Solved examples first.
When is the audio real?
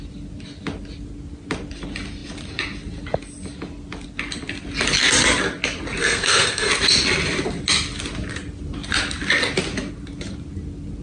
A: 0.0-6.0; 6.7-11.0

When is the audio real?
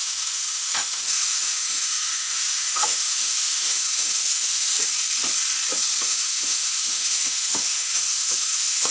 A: 4.7-6.0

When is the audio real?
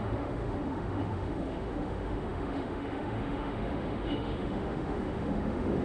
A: none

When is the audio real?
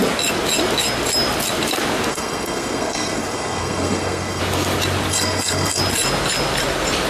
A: 0.0-2.1; 4.4-5.1; 5.8-7.1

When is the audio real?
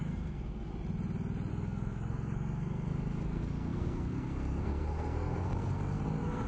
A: 0.7-1.5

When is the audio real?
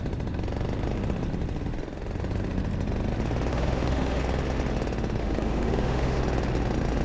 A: 0.0-3.5; 4.2-5.2; 6.2-7.0